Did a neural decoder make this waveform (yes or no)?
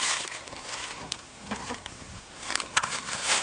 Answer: yes